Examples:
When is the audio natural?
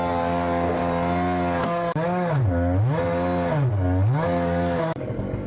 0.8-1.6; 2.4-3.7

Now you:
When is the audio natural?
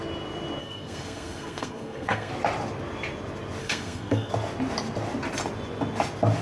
0.0-0.6; 2.3-3.6; 4.3-6.4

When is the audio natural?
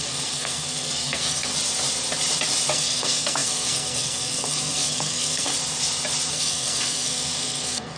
1.5-2.7; 5.5-6.3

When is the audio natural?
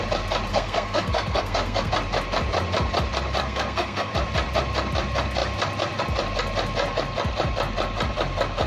0.0-0.5; 1.9-3.4; 4.1-8.7